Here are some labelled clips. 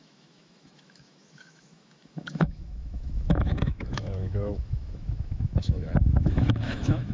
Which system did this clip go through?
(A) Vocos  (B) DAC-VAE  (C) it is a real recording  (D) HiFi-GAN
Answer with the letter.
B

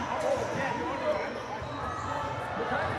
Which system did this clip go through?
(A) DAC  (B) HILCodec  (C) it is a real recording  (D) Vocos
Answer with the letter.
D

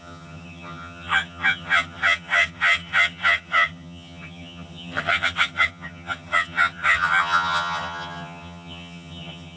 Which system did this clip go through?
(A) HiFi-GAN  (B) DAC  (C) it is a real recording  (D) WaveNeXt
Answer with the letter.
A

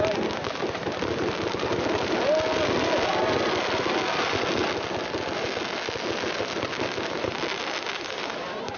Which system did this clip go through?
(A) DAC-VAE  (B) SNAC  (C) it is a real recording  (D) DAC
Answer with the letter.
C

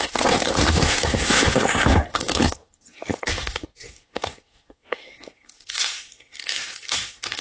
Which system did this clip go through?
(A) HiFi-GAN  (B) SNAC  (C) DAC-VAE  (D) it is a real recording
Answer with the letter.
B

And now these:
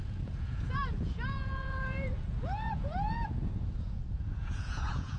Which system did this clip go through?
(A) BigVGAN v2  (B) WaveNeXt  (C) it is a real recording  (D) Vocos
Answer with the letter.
D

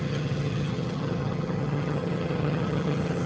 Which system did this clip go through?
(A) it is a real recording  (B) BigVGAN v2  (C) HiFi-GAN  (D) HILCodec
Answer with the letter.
C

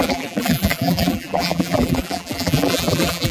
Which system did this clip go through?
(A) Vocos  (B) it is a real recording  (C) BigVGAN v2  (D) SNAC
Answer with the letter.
C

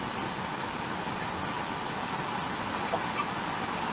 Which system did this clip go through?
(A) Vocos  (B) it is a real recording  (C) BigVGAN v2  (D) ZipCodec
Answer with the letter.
B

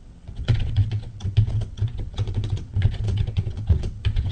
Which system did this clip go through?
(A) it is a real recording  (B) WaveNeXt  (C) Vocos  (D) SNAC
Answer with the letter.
B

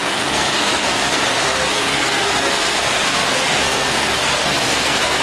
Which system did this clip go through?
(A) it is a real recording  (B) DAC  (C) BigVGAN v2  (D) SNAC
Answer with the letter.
D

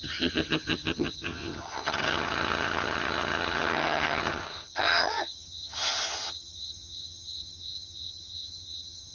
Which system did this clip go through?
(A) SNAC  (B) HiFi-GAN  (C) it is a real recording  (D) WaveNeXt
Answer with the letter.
B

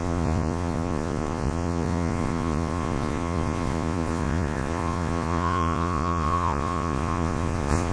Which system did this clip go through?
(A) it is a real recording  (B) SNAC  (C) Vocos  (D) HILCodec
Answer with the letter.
C